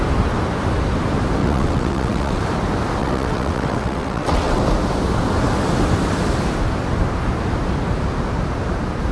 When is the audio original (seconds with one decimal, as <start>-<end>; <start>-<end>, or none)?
0.0-1.4; 2.4-3.0; 4.6-9.1